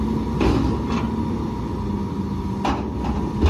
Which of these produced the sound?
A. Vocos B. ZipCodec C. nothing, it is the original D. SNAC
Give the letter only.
C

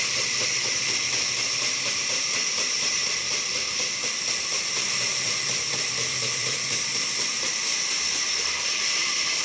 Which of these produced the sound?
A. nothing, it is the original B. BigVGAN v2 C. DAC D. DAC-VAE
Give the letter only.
B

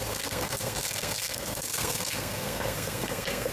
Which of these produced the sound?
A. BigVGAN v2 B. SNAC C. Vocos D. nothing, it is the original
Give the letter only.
B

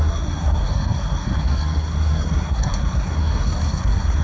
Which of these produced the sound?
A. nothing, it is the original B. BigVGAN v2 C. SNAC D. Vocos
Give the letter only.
C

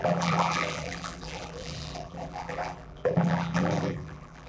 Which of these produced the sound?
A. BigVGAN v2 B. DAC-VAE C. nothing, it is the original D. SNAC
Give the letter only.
A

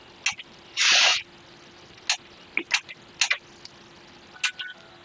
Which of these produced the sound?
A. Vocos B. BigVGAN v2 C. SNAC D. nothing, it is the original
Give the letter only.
D